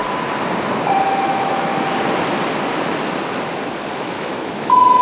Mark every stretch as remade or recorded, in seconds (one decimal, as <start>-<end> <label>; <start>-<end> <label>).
0.0-1.0 recorded; 1.0-1.7 remade; 1.7-3.9 recorded; 3.9-5.0 remade

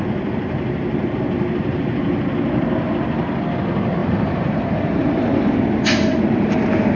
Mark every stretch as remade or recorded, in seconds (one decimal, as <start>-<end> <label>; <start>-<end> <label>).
0.0-4.0 recorded; 4.0-5.5 remade; 5.5-7.0 recorded